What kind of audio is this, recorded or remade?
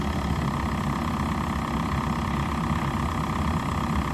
recorded